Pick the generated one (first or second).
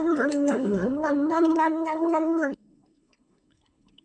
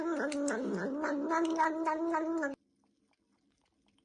first